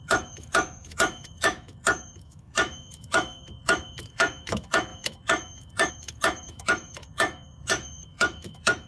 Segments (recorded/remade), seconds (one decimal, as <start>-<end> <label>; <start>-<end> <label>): 0.0-8.9 remade